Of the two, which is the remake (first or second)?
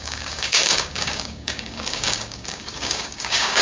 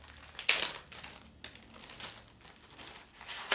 first